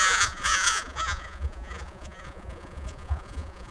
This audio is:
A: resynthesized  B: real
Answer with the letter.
A